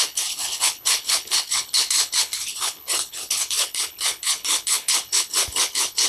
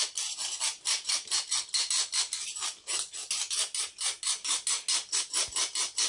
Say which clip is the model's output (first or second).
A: first